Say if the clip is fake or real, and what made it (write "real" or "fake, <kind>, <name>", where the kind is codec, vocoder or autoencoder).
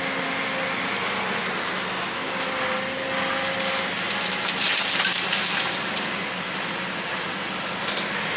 real